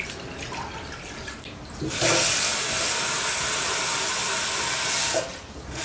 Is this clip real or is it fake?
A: real